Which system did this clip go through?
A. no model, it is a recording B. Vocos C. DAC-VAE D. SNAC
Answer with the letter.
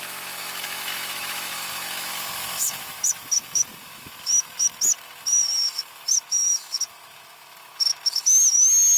C